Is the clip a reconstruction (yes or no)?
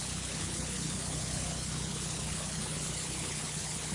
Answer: yes